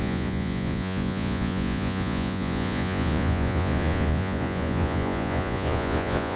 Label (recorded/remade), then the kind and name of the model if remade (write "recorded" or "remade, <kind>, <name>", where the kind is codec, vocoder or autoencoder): remade, vocoder, Vocos